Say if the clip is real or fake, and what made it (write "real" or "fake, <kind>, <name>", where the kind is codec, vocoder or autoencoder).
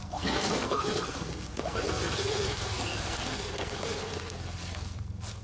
fake, codec, SNAC